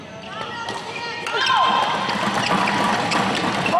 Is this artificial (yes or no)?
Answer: no